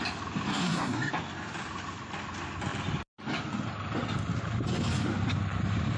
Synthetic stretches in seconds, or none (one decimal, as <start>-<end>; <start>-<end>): 0.5-1.1